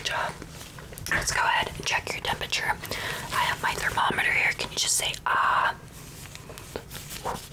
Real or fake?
real